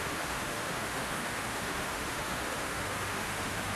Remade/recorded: remade